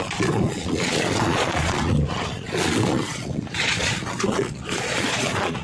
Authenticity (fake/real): fake